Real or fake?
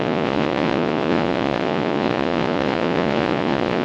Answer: fake